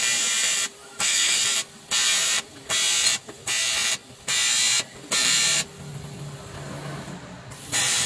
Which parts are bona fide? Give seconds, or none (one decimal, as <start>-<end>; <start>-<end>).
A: 0.0-0.8; 1.4-8.1